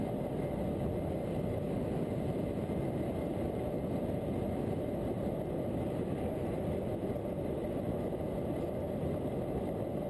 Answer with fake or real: real